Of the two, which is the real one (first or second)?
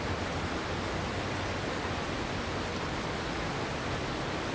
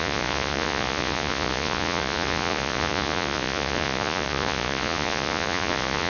first